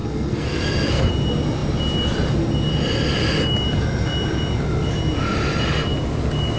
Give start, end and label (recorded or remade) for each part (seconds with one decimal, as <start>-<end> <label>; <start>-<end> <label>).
0.0-1.1 remade; 1.1-6.6 recorded